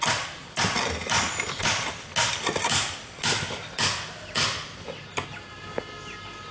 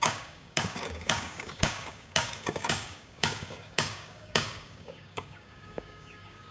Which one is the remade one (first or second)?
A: second